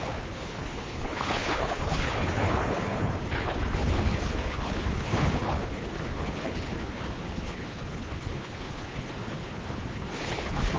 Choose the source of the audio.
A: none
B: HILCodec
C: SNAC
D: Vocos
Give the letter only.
B